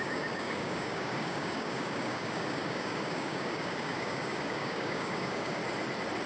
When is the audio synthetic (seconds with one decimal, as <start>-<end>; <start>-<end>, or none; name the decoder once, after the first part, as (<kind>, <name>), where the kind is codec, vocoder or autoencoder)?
0.0-5.6 (codec, DAC)